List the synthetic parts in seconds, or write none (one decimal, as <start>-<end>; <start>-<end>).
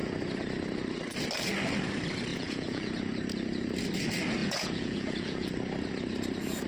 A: 2.3-2.9; 4.4-5.5